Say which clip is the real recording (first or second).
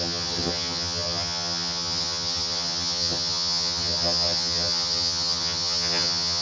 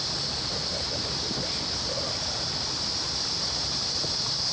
second